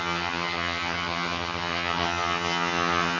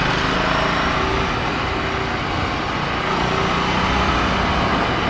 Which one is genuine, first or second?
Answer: second